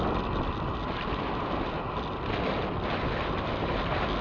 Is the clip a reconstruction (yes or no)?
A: no